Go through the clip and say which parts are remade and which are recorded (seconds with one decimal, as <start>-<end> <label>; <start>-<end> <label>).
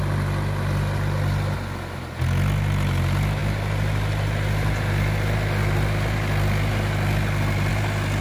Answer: 0.0-3.4 recorded; 3.4-7.7 remade; 7.7-8.2 recorded